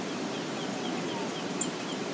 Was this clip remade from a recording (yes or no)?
no